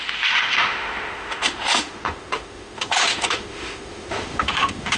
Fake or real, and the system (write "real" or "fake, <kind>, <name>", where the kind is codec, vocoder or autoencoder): fake, autoencoder, DAC-VAE